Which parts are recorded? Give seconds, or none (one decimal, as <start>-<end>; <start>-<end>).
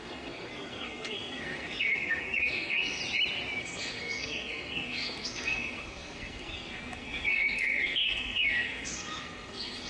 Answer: 3.0-3.6